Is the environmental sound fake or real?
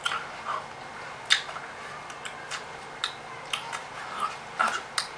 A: real